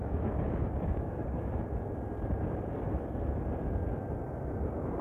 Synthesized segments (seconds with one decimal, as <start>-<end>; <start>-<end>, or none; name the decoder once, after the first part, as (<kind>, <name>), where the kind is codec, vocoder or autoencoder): 0.0-1.5 (codec, DAC)